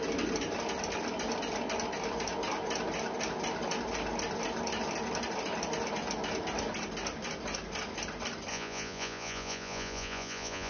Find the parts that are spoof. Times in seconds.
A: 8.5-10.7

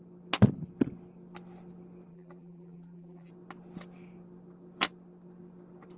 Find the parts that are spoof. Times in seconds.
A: 2.1-3.3

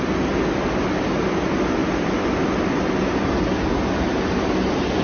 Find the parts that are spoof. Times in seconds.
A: none